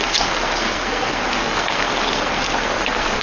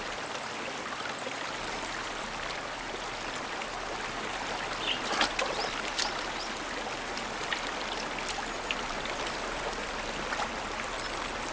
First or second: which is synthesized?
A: first